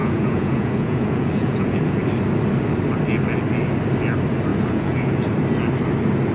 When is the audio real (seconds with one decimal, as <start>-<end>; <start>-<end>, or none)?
2.0-4.5; 5.2-6.3